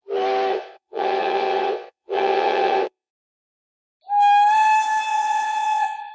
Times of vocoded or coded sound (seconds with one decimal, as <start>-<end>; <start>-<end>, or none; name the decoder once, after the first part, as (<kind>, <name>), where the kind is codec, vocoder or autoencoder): 0.5-3.1 (vocoder, WaveNeXt); 5.1-6.1